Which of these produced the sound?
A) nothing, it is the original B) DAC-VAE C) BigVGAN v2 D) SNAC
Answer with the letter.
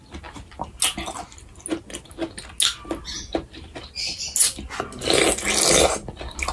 A